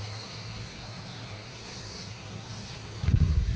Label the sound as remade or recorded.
remade